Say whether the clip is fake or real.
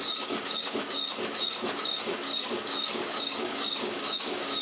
fake